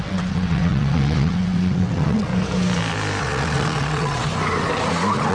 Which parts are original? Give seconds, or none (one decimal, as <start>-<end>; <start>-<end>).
2.3-3.2; 4.3-5.3